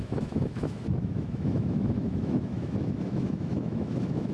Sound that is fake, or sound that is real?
fake